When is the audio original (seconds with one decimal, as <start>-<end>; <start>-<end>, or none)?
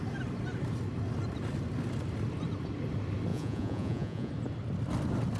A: 0.0-3.3; 4.3-5.4